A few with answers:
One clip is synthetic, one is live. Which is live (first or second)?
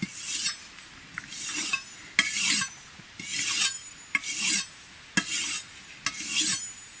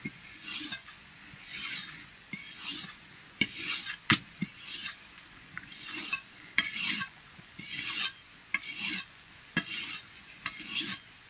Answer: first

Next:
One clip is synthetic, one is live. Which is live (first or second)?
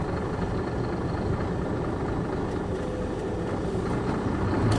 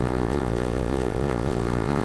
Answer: first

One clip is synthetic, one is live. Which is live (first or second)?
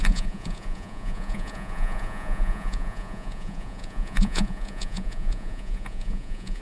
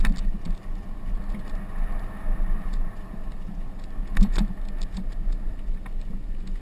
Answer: second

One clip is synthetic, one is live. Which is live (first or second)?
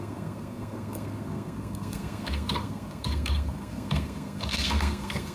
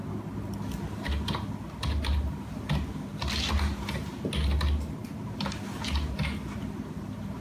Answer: second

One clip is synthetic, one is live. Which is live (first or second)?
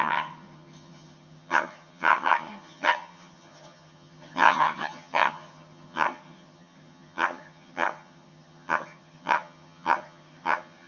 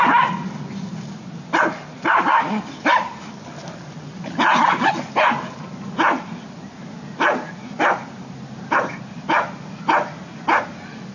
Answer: second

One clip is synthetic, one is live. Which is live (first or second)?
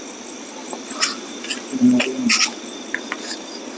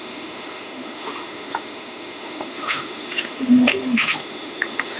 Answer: first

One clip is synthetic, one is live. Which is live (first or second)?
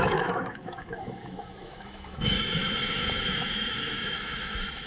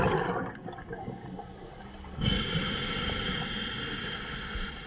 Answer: second